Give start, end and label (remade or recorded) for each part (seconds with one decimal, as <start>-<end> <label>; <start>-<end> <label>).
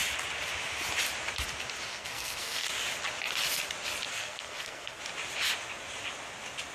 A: 0.0-1.9 recorded; 1.9-2.7 remade; 2.7-4.1 recorded; 4.1-5.0 remade; 5.0-6.7 recorded